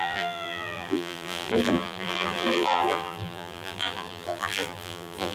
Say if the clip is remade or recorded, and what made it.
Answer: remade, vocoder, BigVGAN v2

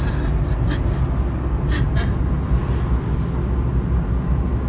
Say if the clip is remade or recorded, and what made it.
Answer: recorded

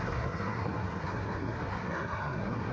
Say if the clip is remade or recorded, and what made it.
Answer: remade, codec, SNAC